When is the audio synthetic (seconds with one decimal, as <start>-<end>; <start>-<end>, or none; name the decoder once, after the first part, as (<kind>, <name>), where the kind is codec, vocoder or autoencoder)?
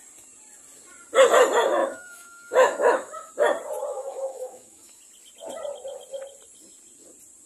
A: 1.8-3.3 (autoencoder, DAC-VAE); 3.9-5.0